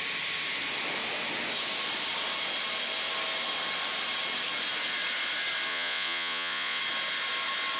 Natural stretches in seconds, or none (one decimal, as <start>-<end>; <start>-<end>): 0.0-5.7; 6.8-7.8

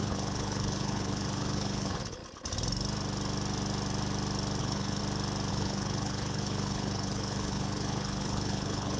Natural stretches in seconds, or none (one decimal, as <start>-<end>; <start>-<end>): 2.2-4.6; 5.0-5.5

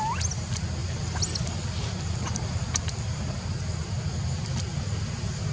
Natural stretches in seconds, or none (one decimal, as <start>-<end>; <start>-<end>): 0.0-0.8; 1.4-2.6; 4.6-5.5

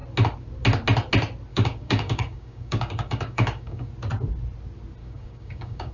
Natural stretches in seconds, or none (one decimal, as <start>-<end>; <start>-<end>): 0.0-1.5; 3.9-5.0

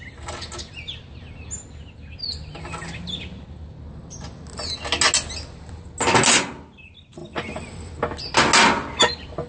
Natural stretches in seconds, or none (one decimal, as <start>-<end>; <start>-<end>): 0.0-9.5